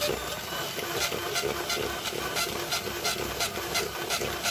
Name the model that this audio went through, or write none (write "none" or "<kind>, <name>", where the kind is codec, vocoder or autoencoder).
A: none